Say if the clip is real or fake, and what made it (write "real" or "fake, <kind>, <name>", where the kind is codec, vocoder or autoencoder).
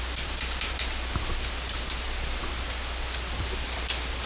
real